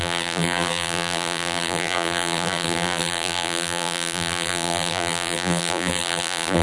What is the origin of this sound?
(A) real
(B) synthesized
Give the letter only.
B